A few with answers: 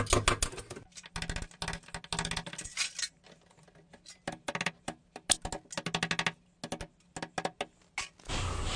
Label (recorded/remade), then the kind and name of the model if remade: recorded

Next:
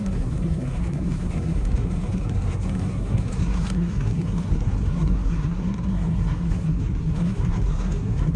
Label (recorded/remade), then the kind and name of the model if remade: remade, codec, SNAC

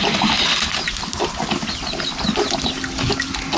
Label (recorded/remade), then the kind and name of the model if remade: recorded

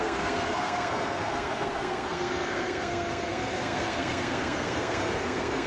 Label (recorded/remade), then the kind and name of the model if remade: remade, codec, SNAC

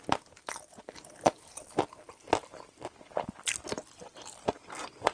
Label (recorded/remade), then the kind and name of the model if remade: recorded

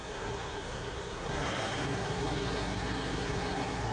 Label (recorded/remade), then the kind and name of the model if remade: remade, codec, SNAC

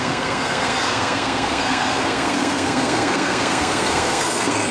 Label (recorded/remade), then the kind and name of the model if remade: remade, codec, SNAC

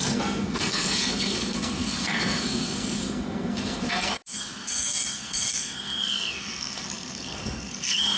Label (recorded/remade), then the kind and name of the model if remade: remade, codec, SNAC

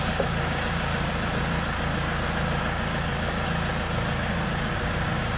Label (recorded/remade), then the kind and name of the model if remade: recorded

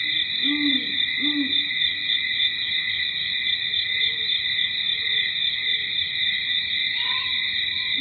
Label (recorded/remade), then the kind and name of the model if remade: recorded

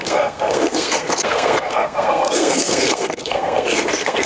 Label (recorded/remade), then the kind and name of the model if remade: remade, codec, SNAC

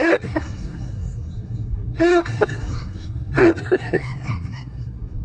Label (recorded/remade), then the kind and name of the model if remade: remade, codec, SNAC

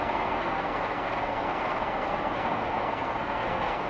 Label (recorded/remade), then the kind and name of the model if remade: remade, codec, SNAC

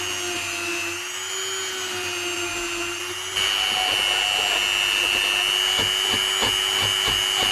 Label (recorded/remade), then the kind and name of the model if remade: recorded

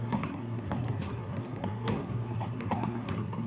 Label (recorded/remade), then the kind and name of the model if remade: remade, codec, SNAC